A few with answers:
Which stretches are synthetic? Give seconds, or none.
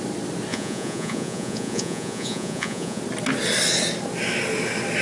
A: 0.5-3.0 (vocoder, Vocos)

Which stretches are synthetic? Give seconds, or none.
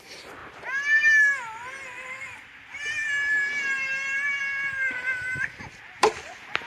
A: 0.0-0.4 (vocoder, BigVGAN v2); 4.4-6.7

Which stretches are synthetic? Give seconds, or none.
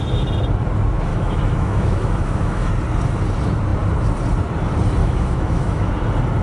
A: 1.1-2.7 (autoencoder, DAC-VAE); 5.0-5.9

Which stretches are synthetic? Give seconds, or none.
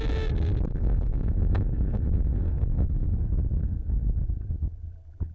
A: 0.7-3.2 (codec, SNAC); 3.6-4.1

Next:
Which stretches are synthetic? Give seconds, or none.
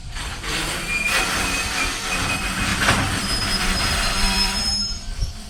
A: 0.0-5.5 (vocoder, BigVGAN v2)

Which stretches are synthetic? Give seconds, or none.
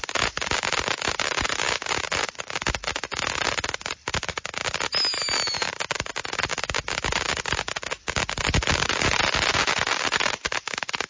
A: none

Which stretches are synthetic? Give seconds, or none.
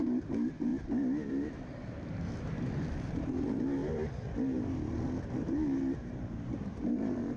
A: 0.0-0.7 (vocoder, BigVGAN v2); 1.3-7.4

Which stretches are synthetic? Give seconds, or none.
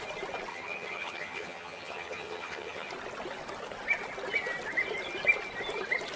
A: 0.5-2.9 (vocoder, HiFi-GAN)